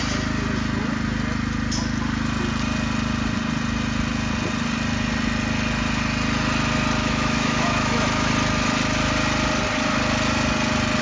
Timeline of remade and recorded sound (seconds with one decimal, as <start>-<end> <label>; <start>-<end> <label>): 0.0-7.0 recorded; 7.0-8.3 remade; 8.3-11.0 recorded